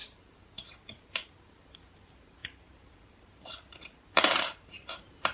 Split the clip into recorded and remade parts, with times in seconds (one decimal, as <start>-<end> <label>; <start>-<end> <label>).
0.0-5.3 remade